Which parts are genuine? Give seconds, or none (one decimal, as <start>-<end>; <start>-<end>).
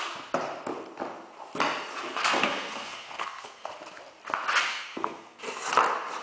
0.0-2.2; 3.7-4.7; 5.4-6.2